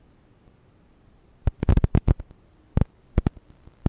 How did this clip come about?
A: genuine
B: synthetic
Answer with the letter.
A